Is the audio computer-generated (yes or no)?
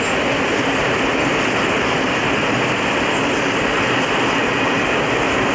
no